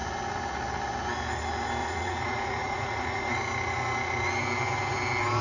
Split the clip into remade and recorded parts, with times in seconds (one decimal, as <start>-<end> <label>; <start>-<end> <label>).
0.0-1.8 recorded; 1.8-3.2 remade; 3.2-5.4 recorded